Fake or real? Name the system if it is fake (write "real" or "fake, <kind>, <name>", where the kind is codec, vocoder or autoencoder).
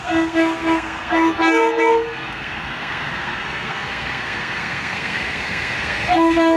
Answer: fake, codec, SNAC